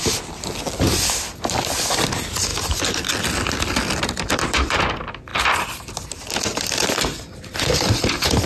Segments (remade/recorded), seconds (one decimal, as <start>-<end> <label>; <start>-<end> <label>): 0.0-8.5 recorded